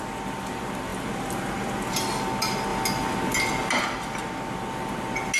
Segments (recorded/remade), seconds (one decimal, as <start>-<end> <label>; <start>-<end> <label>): 0.0-5.4 recorded